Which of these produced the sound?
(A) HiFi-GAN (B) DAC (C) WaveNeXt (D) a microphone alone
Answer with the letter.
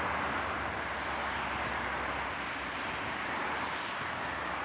D